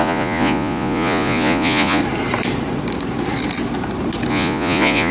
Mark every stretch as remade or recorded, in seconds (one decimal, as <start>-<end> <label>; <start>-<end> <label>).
0.0-2.0 remade; 2.0-4.3 recorded; 4.3-5.1 remade